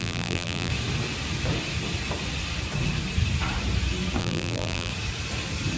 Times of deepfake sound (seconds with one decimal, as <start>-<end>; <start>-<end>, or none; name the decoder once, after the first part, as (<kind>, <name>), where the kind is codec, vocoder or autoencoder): 0.0-0.7 (vocoder, BigVGAN v2); 4.2-4.9